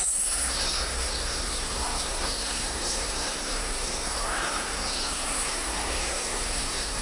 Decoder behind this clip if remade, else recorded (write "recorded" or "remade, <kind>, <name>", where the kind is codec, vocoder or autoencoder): remade, codec, SNAC